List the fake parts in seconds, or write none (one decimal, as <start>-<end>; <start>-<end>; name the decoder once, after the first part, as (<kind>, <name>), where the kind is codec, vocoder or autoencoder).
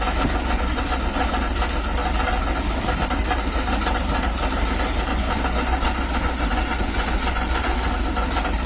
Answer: 0.4-1.3 (vocoder, Vocos); 5.1-7.9